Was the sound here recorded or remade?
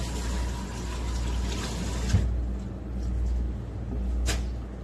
recorded